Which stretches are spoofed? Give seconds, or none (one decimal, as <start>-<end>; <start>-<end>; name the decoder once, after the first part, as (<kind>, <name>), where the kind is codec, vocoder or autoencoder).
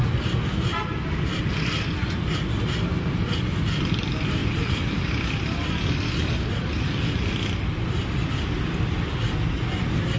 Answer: 4.4-6.1 (vocoder, BigVGAN v2)